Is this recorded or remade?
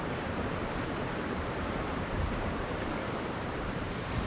remade